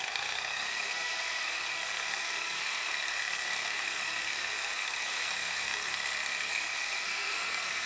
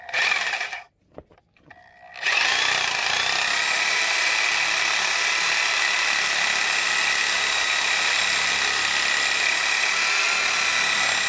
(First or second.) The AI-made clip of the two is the first